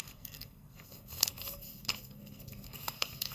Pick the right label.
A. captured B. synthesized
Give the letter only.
B